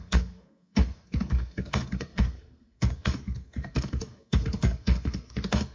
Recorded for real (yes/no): no